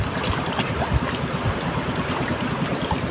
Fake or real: real